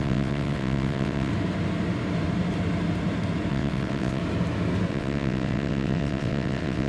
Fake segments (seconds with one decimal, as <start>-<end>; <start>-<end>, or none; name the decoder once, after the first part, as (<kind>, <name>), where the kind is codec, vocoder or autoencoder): 0.0-1.3 (vocoder, WaveNeXt); 3.5-4.2; 4.9-6.9